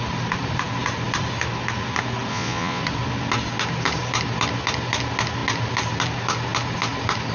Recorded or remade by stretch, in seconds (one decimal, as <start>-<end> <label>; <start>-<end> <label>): 0.0-2.3 recorded; 2.3-2.8 remade; 2.8-7.3 recorded